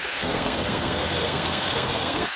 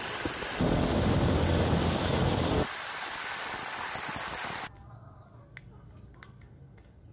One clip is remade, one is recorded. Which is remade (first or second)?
first